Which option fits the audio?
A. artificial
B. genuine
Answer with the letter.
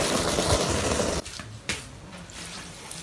B